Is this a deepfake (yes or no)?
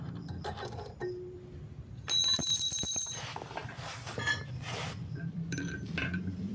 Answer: yes